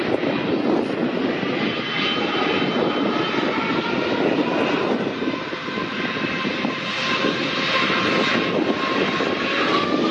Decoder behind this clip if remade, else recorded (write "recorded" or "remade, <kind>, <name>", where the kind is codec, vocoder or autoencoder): recorded